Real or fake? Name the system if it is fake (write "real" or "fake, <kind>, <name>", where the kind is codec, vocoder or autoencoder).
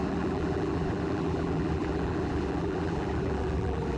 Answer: fake, vocoder, BigVGAN v2